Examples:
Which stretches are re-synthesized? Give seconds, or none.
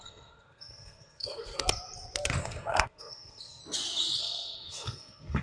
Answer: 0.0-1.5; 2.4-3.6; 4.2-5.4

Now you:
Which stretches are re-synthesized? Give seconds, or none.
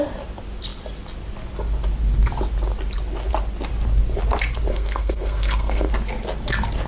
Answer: 4.7-5.9